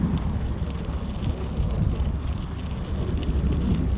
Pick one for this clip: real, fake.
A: real